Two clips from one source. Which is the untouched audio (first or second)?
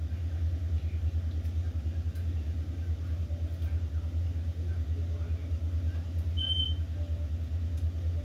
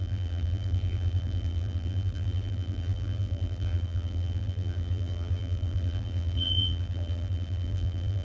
first